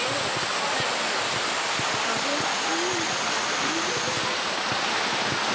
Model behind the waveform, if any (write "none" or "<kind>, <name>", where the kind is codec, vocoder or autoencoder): none